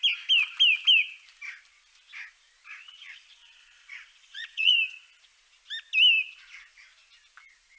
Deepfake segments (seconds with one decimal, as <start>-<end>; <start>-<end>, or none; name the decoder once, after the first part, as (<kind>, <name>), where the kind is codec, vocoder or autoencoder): 2.7-4.7 (vocoder, Vocos)